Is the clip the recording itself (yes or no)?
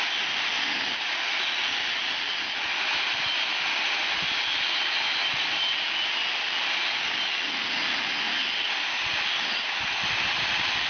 yes